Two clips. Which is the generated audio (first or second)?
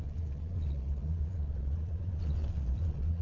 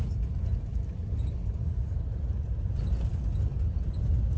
first